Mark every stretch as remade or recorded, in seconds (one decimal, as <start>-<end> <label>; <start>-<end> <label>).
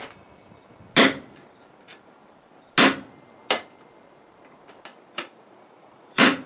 0.0-4.9 recorded; 4.9-6.5 remade